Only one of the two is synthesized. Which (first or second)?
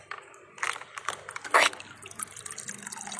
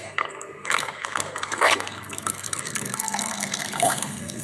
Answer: second